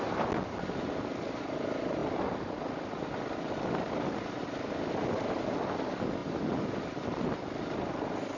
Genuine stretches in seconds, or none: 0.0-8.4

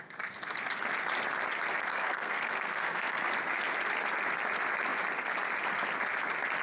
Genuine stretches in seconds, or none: 0.0-1.9; 3.2-6.6